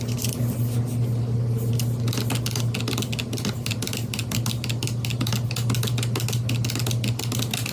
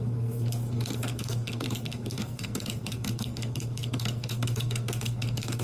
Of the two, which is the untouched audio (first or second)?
first